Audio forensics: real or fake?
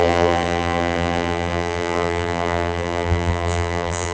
fake